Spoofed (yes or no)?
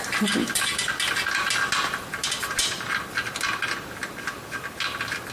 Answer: no